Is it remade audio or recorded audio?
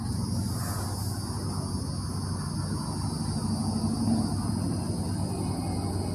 recorded